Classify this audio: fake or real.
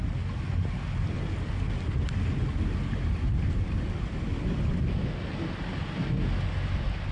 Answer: real